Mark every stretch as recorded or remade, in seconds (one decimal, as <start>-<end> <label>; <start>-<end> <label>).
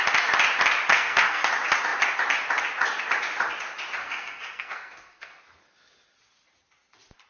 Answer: 0.0-0.9 recorded; 0.9-1.5 remade; 1.5-4.0 recorded; 4.0-5.4 remade; 5.4-7.3 recorded